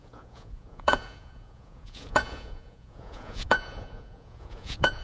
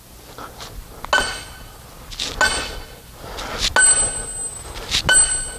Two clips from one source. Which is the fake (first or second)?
first